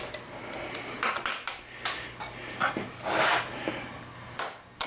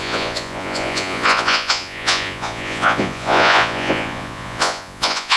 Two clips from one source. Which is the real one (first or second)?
first